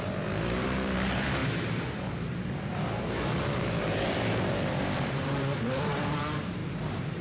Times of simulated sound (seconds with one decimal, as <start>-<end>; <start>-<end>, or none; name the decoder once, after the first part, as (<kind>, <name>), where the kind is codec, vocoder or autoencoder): 0.0-7.2 (vocoder, BigVGAN v2)